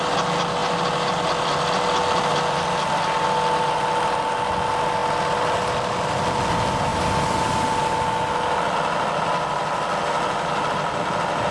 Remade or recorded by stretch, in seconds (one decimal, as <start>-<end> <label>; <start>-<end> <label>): 0.0-11.5 recorded